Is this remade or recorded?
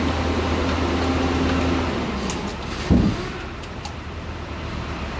recorded